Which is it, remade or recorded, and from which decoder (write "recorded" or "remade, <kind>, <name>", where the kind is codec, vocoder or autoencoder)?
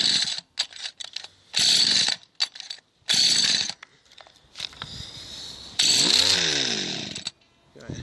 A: recorded